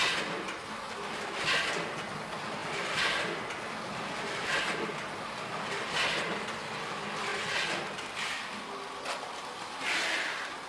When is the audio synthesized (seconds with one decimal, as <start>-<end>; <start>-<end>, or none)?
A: none